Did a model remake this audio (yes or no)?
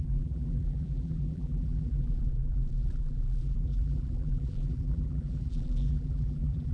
yes